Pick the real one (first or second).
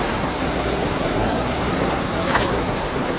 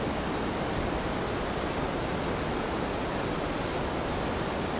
second